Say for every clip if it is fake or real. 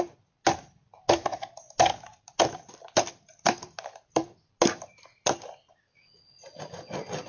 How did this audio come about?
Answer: real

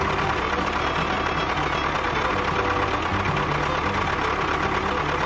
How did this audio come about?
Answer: real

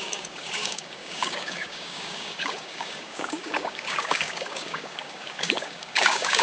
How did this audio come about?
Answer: fake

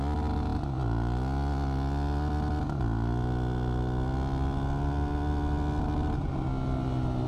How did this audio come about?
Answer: real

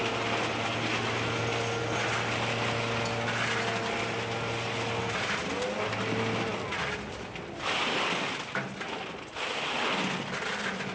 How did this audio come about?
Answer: real